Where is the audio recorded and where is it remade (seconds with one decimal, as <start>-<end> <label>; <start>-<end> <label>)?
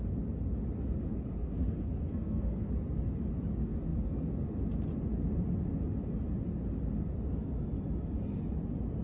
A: 0.0-1.4 recorded; 1.4-2.7 remade; 2.7-9.0 recorded